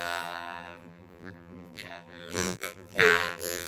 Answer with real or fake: fake